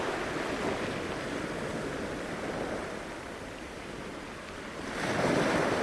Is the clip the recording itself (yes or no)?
yes